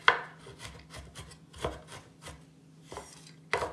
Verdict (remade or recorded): recorded